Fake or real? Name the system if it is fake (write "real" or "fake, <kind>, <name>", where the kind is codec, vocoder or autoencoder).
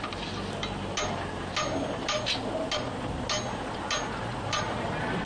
real